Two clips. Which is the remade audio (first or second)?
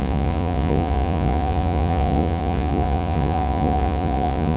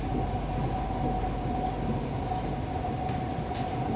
first